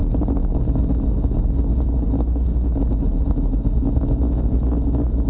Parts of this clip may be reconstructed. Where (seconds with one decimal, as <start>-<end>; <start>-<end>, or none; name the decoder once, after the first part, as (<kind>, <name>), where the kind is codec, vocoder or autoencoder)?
3.2-5.3 (autoencoder, DAC-VAE)